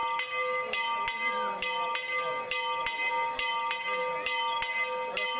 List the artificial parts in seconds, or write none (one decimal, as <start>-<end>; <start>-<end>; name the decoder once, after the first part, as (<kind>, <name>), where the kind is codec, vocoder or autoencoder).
none